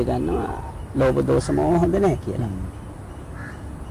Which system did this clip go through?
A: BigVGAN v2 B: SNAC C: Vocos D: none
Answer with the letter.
D